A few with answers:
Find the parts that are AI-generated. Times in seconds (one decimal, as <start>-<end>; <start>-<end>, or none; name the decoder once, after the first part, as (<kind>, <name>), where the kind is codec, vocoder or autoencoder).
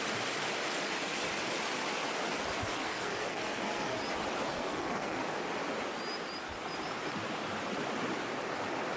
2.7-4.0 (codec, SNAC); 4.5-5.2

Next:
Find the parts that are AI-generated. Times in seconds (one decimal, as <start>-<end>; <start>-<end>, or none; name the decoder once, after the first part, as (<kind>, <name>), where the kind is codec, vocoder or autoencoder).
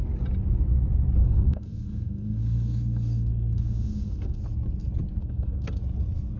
1.2-4.4 (codec, SNAC); 5.2-5.8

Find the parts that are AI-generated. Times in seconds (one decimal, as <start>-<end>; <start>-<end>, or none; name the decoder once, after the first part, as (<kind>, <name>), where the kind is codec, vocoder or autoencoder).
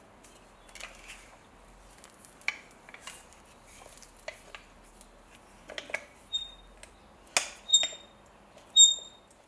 none